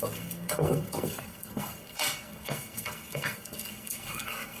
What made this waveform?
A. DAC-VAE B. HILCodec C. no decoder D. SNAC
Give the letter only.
D